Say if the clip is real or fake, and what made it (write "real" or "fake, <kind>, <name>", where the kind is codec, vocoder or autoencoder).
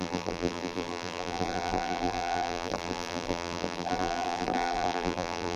fake, vocoder, BigVGAN v2